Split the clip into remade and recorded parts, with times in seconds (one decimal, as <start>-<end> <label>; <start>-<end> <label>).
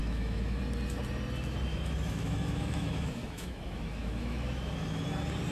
0.0-0.6 remade; 0.6-1.7 recorded; 1.7-5.0 remade; 5.0-5.5 recorded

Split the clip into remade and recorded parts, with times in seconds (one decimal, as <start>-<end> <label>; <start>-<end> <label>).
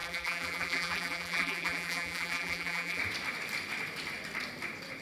0.0-3.0 remade; 3.0-5.0 recorded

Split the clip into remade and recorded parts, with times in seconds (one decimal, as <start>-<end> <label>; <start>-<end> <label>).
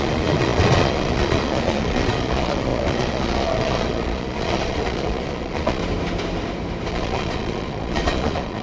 0.0-5.8 remade; 5.8-6.9 recorded; 6.9-8.6 remade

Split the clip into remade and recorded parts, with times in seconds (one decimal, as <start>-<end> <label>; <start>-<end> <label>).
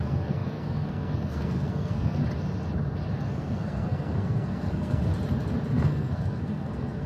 0.0-2.2 remade; 2.2-3.1 recorded; 3.1-5.1 remade; 5.1-5.7 recorded; 5.7-7.1 remade